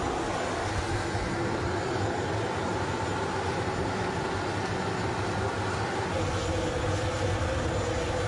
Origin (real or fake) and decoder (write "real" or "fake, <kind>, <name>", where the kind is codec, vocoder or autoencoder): real